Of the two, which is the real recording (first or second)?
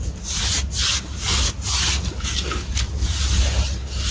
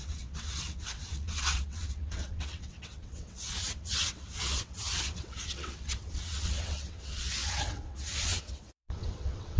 first